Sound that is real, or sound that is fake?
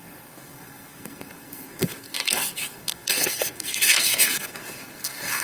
fake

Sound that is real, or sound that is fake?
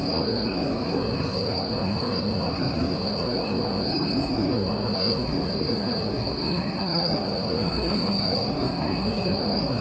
fake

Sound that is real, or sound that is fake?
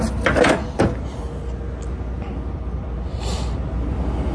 real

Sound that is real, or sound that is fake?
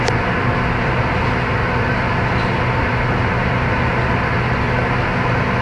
real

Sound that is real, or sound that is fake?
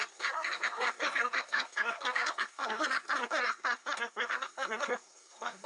fake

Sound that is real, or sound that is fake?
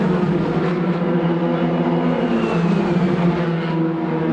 real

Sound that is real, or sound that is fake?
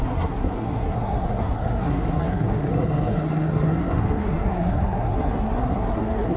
fake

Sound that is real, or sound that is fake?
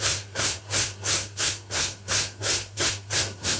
fake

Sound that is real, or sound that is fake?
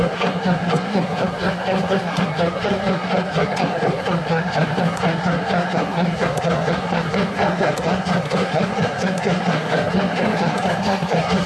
fake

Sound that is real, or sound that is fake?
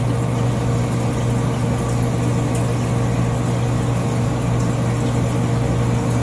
real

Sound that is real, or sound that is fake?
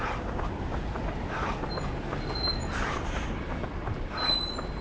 real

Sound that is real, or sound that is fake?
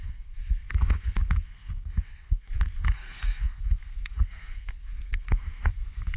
fake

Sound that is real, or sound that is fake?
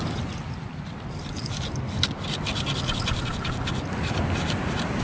real